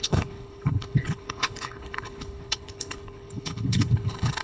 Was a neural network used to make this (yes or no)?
yes